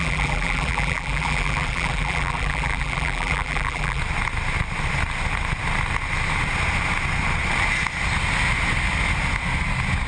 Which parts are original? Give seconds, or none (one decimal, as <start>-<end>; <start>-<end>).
4.0-10.1